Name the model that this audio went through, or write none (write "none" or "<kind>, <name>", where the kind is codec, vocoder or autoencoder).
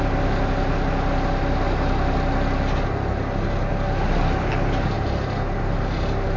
none